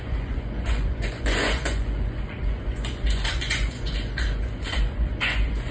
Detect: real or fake fake